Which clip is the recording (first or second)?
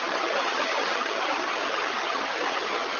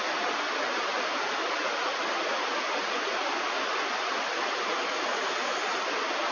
second